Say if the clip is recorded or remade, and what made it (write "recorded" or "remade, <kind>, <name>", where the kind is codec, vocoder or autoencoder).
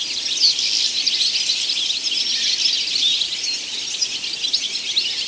recorded